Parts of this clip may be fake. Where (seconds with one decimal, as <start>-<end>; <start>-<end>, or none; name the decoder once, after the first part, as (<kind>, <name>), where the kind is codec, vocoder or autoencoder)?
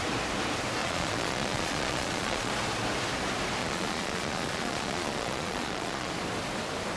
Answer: 0.8-2.5 (vocoder, Vocos); 3.6-6.1